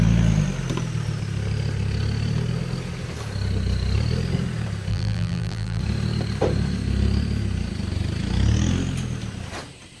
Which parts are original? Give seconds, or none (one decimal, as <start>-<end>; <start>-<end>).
0.0-4.9; 5.8-10.0